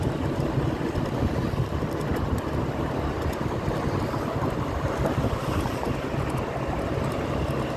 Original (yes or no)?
yes